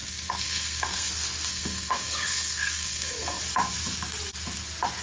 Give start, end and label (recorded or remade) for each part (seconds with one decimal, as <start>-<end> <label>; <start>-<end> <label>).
0.0-1.1 remade; 1.1-1.5 recorded; 1.5-3.4 remade; 3.4-5.0 recorded